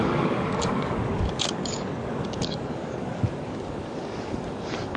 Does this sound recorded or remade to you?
remade